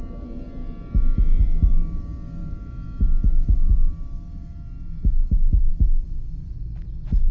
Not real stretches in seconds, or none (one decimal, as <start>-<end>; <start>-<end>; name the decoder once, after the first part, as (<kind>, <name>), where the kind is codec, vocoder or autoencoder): none